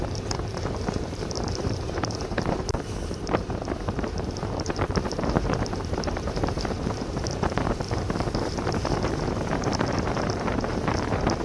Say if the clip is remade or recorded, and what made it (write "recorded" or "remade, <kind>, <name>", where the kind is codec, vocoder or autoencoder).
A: remade, vocoder, BigVGAN v2